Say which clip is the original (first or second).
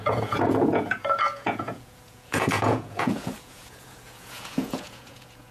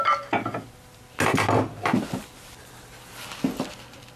second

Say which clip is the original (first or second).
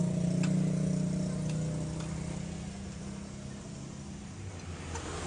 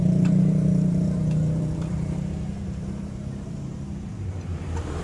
first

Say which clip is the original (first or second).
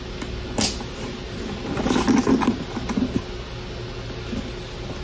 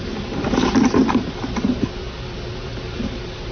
first